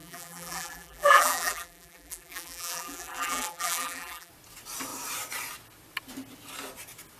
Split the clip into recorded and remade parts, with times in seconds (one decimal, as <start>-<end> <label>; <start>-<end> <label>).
0.0-4.3 remade; 4.3-7.2 recorded

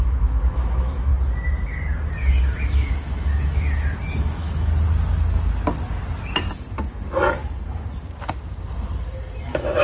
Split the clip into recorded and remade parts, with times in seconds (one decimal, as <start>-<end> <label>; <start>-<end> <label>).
0.0-1.1 remade; 1.1-2.4 recorded; 2.4-3.3 remade; 3.3-4.2 recorded; 4.2-4.7 remade; 4.7-9.4 recorded; 9.4-9.8 remade

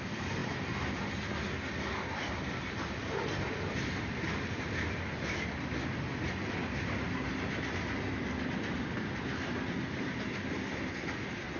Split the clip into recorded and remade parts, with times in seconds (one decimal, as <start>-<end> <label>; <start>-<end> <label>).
0.0-11.6 recorded

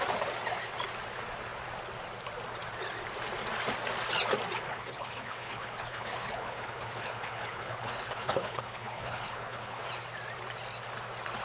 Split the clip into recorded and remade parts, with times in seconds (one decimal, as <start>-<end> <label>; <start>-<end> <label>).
0.0-4.7 recorded; 4.7-9.8 remade; 9.8-11.4 recorded

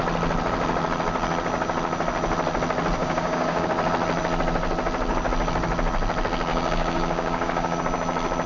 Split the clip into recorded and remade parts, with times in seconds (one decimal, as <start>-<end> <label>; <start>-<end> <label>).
0.0-3.0 recorded; 3.0-3.7 remade; 3.7-6.5 recorded; 6.5-7.8 remade; 7.8-8.5 recorded

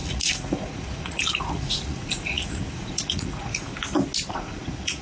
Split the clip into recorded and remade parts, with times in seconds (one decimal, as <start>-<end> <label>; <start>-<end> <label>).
0.0-3.7 remade; 3.7-4.3 recorded; 4.3-5.0 remade

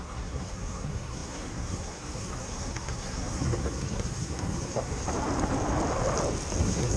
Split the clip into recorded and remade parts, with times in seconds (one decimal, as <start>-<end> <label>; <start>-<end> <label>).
0.0-5.0 remade; 5.0-6.6 recorded; 6.6-7.0 remade